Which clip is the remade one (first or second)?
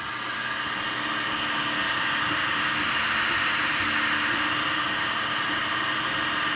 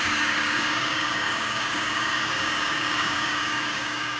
second